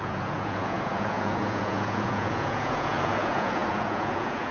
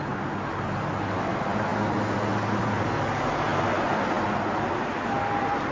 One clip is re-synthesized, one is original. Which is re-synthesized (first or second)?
first